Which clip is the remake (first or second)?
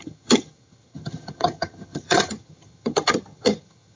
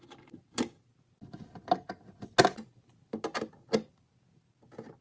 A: first